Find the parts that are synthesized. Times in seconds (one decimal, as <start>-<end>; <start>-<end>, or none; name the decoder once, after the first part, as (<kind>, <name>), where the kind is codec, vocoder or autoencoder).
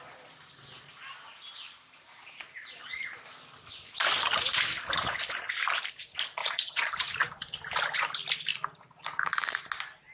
6.4-6.9 (vocoder, Vocos); 8.5-9.6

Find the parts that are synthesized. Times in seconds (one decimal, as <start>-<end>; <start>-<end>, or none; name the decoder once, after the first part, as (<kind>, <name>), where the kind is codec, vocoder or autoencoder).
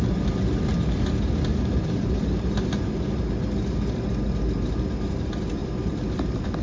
1.5-3.2 (vocoder, BigVGAN v2); 5.6-6.6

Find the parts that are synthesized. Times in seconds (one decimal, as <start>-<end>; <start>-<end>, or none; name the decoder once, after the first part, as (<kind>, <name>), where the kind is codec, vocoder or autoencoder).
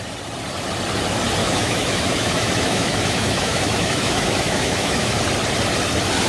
1.4-5.2 (autoencoder, DAC-VAE)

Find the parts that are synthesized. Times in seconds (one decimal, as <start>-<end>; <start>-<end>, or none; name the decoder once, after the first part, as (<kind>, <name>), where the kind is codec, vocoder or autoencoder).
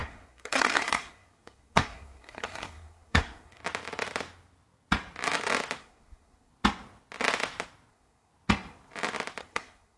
0.0-3.6 (codec, SNAC); 5.8-6.5; 7.9-8.3; 9.4-10.0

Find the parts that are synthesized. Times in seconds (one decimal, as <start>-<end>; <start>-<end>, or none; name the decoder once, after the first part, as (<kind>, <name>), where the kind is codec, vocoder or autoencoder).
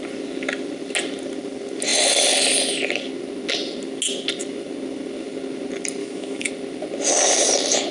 6.0-6.5 (autoencoder, DAC-VAE)